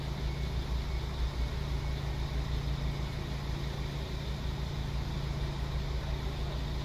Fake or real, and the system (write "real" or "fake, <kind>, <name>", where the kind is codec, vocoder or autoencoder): real